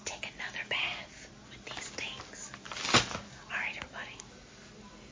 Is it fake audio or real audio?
real